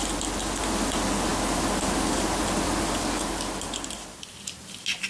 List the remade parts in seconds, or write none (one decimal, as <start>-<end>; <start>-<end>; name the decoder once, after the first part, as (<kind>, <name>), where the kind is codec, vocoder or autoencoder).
none